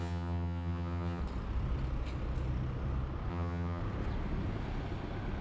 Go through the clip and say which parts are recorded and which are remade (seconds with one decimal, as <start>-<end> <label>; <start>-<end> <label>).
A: 0.0-1.2 remade; 1.2-3.3 recorded; 3.3-3.8 remade; 3.8-5.4 recorded